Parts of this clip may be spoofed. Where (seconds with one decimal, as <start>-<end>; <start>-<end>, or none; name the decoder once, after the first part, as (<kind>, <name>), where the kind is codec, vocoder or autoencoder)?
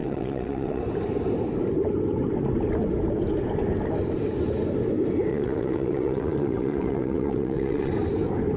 0.0-0.8 (vocoder, WaveNeXt); 5.3-7.9